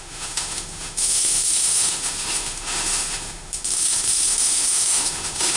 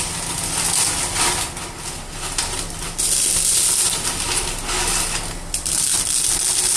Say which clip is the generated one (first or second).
first